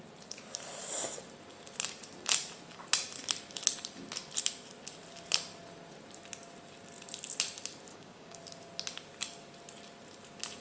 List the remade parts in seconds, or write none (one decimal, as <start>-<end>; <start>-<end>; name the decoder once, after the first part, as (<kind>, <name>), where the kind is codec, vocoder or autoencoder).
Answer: 7.9-8.4 (codec, DAC)